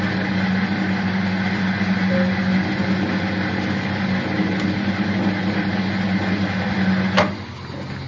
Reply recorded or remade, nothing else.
recorded